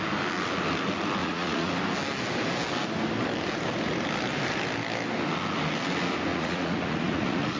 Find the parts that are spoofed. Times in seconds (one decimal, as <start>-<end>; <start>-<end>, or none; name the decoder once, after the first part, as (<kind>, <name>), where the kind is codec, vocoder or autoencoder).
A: 1.2-1.7 (vocoder, Vocos); 6.3-7.6